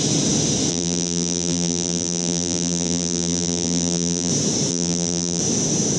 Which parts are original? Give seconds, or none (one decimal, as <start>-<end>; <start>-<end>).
0.0-0.7; 4.3-4.7; 5.4-6.0